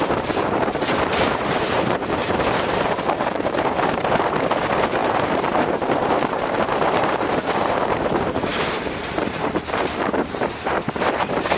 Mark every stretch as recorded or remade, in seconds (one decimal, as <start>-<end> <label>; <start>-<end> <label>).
0.0-8.5 remade; 8.5-9.0 recorded; 9.0-11.6 remade